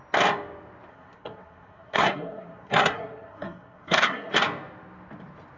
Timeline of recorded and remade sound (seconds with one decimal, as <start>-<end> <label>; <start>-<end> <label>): 0.0-0.9 recorded; 0.9-4.3 remade; 4.3-5.6 recorded